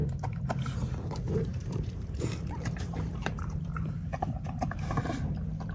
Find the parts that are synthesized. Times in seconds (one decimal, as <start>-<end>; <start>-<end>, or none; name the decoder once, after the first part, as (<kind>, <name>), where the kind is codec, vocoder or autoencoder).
0.0-0.6 (vocoder, BigVGAN v2); 1.5-4.9